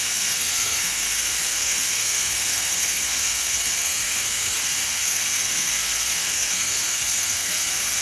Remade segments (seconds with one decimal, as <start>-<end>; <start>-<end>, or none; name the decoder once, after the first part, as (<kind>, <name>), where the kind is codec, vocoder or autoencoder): 0.0-8.0 (codec, SNAC)